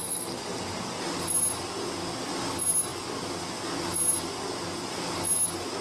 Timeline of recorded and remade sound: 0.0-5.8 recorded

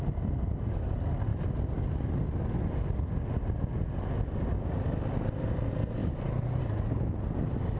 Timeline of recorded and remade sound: 0.0-6.0 recorded; 6.0-6.6 remade; 6.6-7.8 recorded

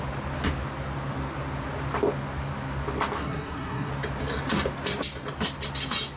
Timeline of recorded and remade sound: 0.0-3.2 recorded; 3.2-3.9 remade; 3.9-6.2 recorded